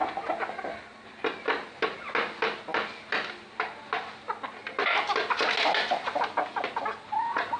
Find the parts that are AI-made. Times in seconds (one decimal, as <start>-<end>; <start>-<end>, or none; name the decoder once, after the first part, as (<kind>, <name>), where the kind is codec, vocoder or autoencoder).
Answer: none